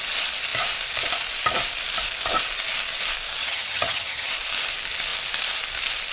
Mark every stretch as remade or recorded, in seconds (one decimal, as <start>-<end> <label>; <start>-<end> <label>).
0.0-3.4 recorded; 3.4-4.3 remade; 4.3-6.1 recorded